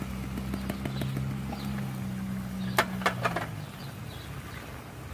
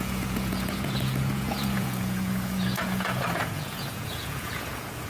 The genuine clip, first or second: first